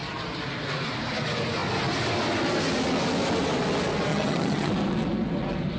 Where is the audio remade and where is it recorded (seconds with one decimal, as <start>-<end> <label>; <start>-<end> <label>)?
0.0-4.1 recorded; 4.1-4.7 remade; 4.7-5.8 recorded